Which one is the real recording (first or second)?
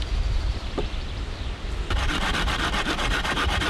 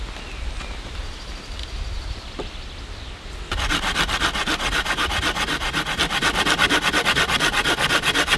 second